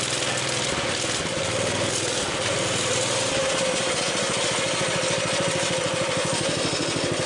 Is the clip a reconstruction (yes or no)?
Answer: no